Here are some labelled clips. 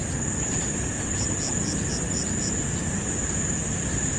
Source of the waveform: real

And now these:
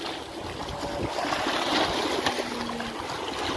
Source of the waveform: real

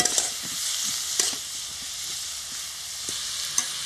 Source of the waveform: real